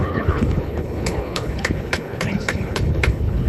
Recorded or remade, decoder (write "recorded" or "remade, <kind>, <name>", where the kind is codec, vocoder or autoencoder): remade, codec, HILCodec